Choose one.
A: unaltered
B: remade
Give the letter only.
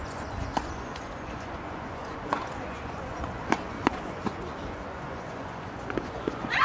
B